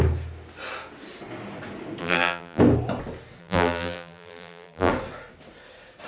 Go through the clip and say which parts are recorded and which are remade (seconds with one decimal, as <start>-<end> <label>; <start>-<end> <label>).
0.0-2.0 recorded; 2.0-2.6 remade; 2.6-3.4 recorded; 3.4-4.9 remade; 4.9-6.1 recorded